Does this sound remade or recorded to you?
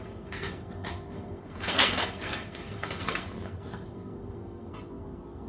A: remade